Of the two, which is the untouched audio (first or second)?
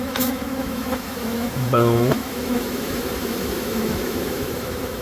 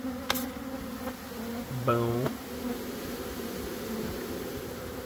second